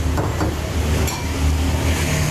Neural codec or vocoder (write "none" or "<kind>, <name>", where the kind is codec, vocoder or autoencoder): none